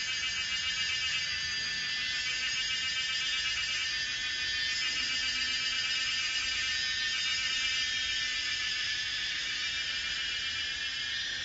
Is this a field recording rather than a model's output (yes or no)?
yes